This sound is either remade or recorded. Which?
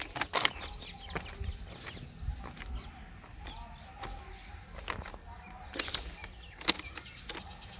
recorded